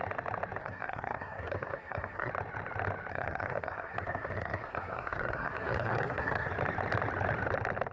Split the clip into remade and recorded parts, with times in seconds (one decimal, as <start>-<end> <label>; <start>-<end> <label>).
0.0-0.6 recorded; 0.6-2.3 remade; 2.3-3.1 recorded; 3.1-6.5 remade; 6.5-7.9 recorded